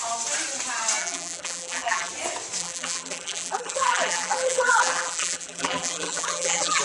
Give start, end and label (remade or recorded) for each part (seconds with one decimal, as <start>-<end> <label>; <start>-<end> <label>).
0.0-1.0 recorded; 1.0-2.1 remade; 2.1-2.6 recorded; 2.6-6.8 remade